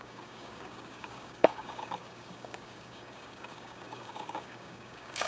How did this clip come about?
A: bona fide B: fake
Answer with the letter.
B